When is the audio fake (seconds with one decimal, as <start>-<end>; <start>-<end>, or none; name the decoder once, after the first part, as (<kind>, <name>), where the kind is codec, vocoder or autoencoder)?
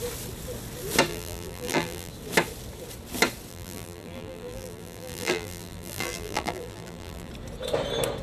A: 1.1-2.1 (vocoder, BigVGAN v2); 3.5-7.3